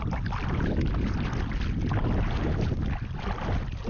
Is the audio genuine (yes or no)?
yes